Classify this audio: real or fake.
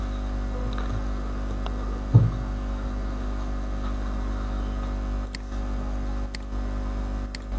real